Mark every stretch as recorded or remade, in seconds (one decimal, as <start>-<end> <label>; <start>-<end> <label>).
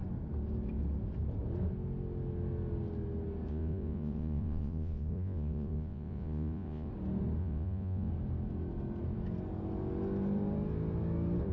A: 0.0-3.5 recorded; 3.5-6.9 remade; 6.9-7.4 recorded; 7.4-8.1 remade; 8.1-11.5 recorded